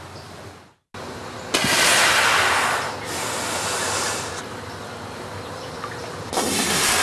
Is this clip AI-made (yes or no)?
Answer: no